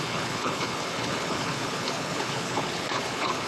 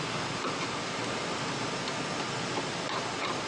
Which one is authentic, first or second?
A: second